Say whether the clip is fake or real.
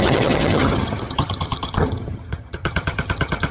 fake